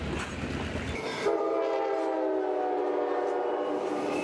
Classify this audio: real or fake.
real